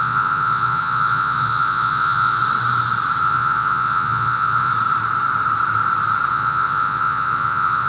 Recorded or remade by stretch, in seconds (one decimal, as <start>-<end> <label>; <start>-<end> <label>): 0.0-2.4 remade; 2.4-3.2 recorded; 3.2-4.7 remade; 4.7-6.3 recorded; 6.3-7.9 remade